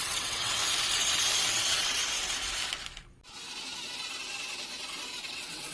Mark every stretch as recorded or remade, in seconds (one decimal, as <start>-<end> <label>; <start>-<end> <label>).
0.0-0.6 remade; 0.6-1.5 recorded; 1.5-2.0 remade; 2.0-5.3 recorded; 5.3-5.7 remade